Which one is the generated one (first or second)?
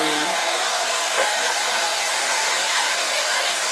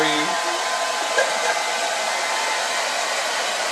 first